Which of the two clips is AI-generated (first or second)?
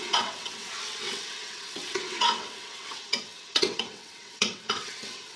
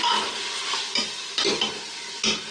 first